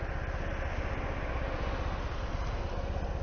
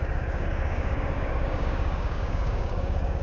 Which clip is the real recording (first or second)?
first